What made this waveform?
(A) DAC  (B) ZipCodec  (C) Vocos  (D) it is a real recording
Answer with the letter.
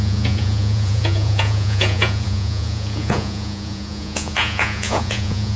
C